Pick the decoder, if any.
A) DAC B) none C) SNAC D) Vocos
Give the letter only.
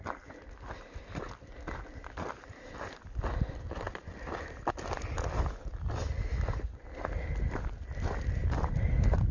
B